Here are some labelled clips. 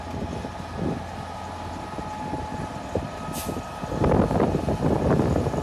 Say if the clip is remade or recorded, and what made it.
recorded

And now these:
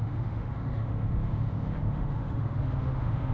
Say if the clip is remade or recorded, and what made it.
remade, autoencoder, DAC-VAE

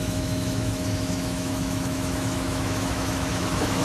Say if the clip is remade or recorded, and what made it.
remade, autoencoder, DAC-VAE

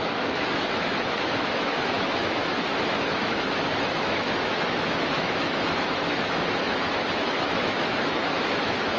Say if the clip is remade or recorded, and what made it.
remade, autoencoder, DAC-VAE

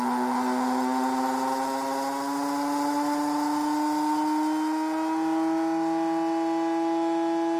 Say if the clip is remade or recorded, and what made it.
recorded